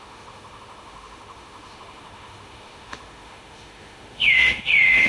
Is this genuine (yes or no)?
no